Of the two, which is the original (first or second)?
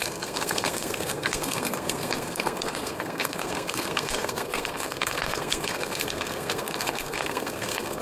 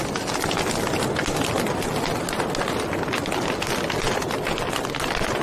second